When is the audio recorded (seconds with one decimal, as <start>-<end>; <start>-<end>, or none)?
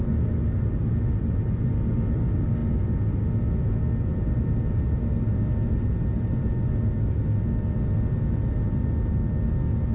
0.0-4.1; 7.2-9.9